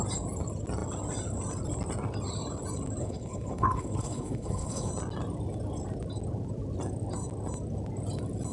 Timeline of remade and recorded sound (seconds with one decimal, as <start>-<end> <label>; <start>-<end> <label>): 0.0-3.0 recorded; 3.0-4.9 remade; 4.9-8.5 recorded